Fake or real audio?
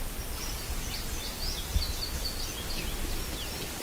real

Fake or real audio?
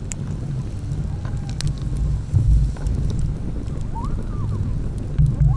real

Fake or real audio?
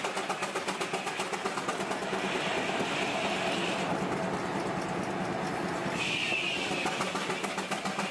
real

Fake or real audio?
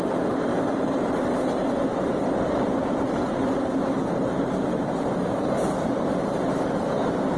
fake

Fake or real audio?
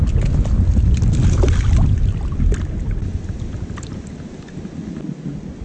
real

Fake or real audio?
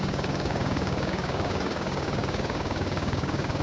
fake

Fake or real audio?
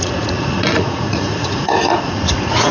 fake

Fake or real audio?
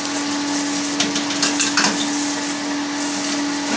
real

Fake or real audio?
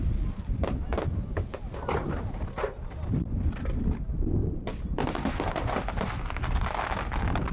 real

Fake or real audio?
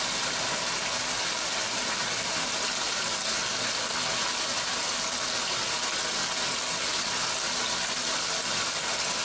real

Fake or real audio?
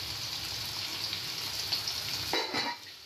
real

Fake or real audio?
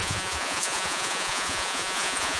fake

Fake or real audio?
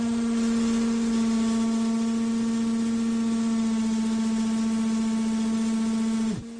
real